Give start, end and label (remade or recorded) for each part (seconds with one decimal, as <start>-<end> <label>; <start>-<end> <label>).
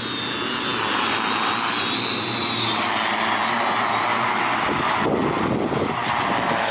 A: 0.0-6.7 recorded